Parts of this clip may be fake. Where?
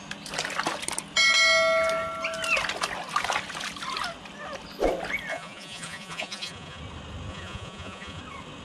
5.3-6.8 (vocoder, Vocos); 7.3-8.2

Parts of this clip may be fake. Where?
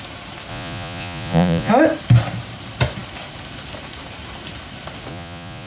0.5-1.7 (vocoder, Vocos); 5.1-5.7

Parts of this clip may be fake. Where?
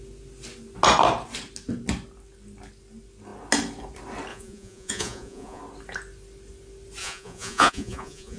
4.3-5.6 (vocoder, Vocos); 7.0-8.4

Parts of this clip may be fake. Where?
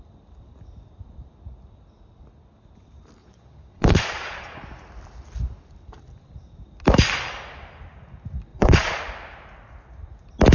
3.2-4.6 (vocoder, Vocos); 8.5-9.0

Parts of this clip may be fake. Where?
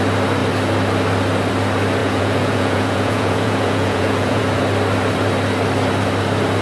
2.0-4.4 (vocoder, Vocos)